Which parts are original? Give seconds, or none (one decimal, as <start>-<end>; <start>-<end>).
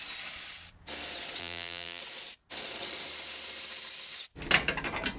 0.0-1.4; 2.0-5.2